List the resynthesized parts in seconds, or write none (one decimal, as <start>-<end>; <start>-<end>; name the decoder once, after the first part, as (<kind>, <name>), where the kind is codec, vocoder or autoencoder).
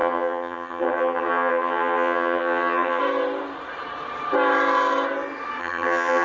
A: 0.0-3.0 (vocoder, HiFi-GAN); 5.6-6.2